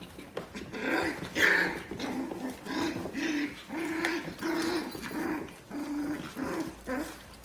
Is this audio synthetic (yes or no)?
no